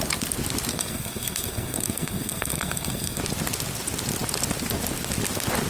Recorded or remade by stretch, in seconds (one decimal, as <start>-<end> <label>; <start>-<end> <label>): 0.0-0.7 recorded; 0.7-3.2 remade; 3.2-5.7 recorded